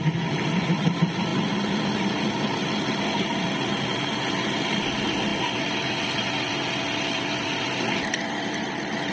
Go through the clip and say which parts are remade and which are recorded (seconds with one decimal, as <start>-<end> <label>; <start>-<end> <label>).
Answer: 0.0-9.1 recorded